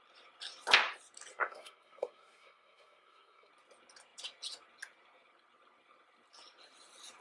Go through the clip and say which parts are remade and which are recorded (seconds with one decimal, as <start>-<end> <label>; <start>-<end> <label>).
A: 0.0-1.3 recorded; 1.3-3.5 remade; 3.5-7.2 recorded